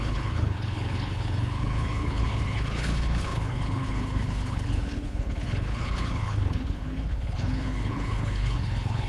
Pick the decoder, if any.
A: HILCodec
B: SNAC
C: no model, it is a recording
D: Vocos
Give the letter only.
A